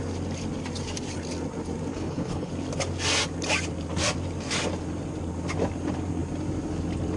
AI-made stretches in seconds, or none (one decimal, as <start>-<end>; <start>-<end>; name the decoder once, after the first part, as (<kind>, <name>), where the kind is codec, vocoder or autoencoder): 1.9-2.5 (codec, HILCodec)